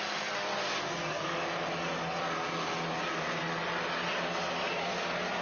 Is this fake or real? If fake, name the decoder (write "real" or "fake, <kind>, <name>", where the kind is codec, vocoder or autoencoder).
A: real